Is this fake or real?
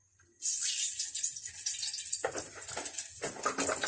real